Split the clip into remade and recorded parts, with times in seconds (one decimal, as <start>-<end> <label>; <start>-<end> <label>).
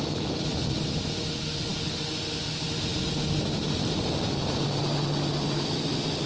0.0-6.3 recorded